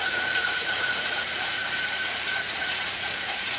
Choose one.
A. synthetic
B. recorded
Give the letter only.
A